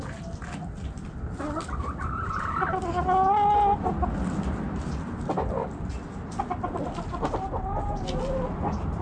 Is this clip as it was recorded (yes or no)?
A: yes